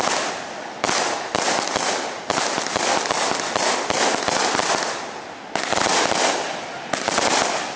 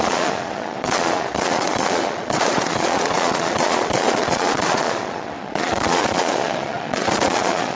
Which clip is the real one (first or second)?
first